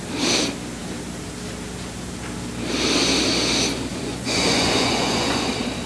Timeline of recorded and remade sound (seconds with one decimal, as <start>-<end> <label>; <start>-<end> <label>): 0.0-3.9 recorded; 3.9-5.5 remade; 5.5-5.9 recorded